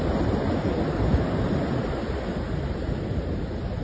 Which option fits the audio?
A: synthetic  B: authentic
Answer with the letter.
B